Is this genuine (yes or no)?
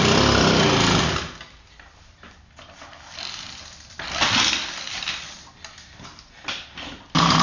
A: yes